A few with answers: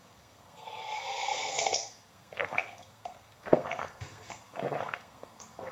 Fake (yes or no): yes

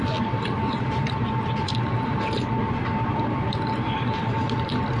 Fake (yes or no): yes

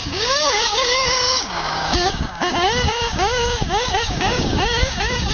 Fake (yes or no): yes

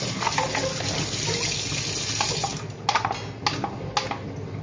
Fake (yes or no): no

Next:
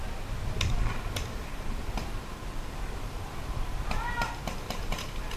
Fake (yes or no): no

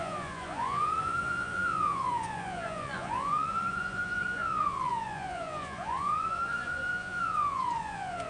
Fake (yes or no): yes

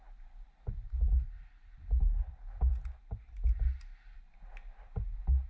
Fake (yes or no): no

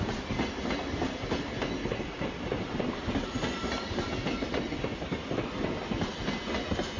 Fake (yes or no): no